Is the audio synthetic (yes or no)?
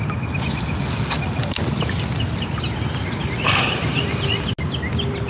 no